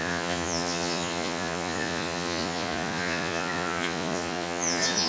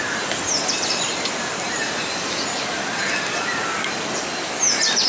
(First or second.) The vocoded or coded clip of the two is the first